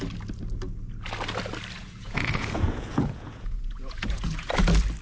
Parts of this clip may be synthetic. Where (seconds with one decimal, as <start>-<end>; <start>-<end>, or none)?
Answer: 1.8-4.5